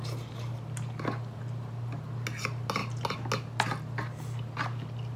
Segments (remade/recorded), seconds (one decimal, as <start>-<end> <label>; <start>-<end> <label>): 0.0-5.2 recorded